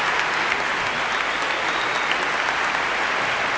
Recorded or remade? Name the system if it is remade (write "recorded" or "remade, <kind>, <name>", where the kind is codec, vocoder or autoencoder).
recorded